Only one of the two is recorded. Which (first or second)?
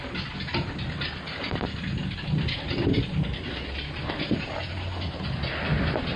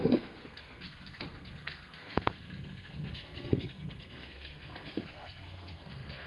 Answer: first